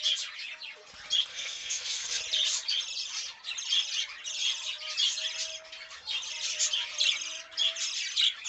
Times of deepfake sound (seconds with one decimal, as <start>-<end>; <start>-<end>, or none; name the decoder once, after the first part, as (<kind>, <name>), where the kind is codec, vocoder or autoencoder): 1.3-2.2 (codec, SNAC)